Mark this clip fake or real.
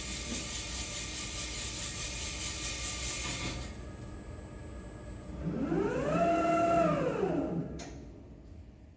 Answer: real